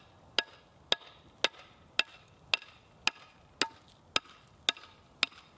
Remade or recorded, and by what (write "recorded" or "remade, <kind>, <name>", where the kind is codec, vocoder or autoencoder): recorded